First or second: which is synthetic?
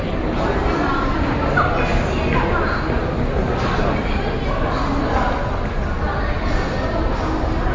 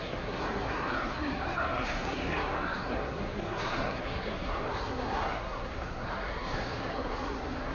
second